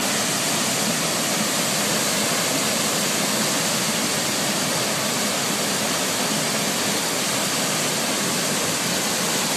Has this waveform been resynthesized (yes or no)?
no